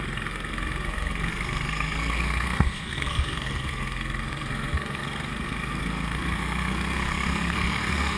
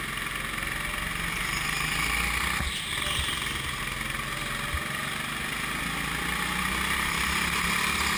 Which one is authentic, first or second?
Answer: second